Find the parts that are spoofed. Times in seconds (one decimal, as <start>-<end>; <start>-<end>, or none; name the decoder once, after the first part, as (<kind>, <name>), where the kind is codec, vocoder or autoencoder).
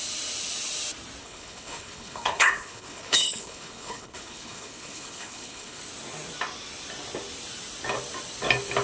1.2-5.8 (codec, HILCodec)